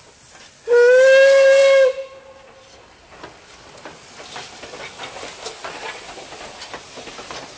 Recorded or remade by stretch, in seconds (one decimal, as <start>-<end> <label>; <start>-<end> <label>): 0.0-7.6 recorded